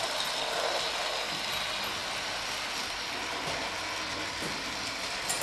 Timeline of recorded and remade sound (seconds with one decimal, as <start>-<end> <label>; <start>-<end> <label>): 0.0-5.4 recorded